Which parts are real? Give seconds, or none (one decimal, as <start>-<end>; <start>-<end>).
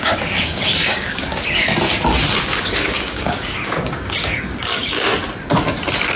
1.7-2.4; 5.1-6.2